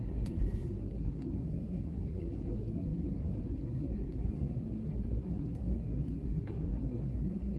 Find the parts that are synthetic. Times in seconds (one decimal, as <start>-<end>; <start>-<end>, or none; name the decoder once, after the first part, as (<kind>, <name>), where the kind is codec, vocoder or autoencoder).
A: 0.0-7.6 (codec, SNAC)